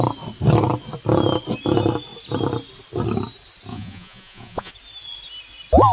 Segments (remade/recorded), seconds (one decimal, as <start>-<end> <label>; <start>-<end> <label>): 0.0-3.7 recorded; 3.7-4.7 remade; 4.7-5.9 recorded